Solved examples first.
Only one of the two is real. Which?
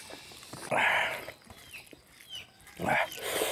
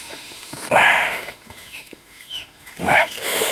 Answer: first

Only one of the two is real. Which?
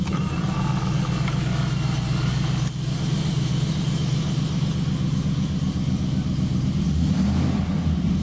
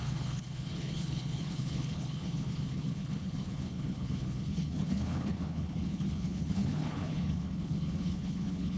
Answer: first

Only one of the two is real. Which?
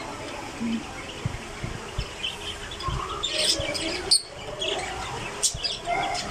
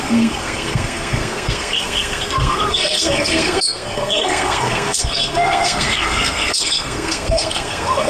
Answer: first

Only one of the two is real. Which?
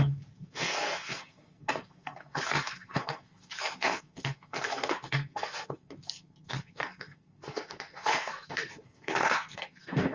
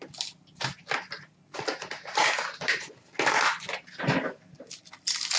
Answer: second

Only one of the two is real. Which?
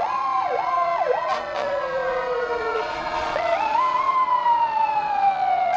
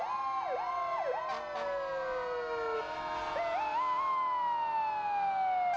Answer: second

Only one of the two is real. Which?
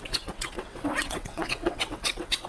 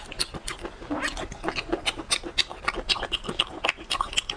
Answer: second